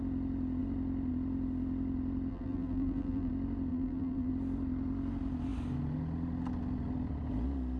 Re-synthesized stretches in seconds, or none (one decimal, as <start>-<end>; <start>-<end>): 2.3-3.3; 3.7-4.3